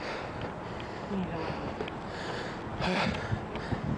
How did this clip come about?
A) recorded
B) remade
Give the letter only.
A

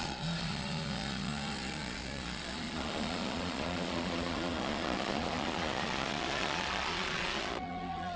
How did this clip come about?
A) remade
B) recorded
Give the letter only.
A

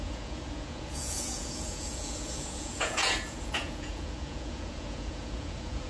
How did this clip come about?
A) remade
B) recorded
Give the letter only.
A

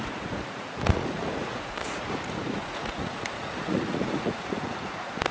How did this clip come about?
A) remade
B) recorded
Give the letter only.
A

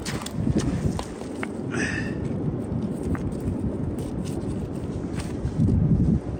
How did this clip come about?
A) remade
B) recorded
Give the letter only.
B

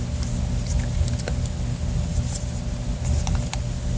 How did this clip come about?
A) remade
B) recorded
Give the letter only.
B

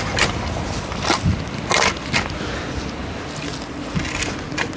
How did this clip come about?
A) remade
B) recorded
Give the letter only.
B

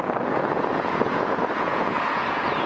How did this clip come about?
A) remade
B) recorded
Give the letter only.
A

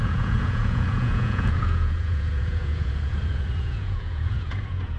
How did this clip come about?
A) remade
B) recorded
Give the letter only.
A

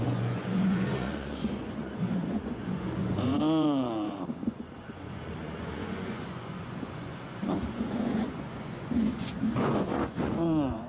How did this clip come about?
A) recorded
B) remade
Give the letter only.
B